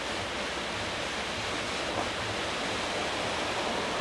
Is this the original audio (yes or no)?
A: yes